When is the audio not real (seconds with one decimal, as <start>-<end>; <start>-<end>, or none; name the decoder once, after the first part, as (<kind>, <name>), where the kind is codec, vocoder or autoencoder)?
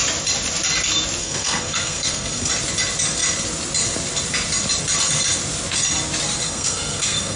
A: 1.2-2.5 (codec, SNAC); 6.4-7.4